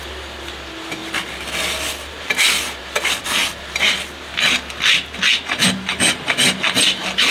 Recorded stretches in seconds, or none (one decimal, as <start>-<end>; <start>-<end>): 3.4-6.1